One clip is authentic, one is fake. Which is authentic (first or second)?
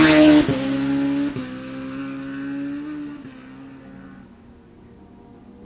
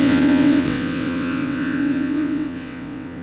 first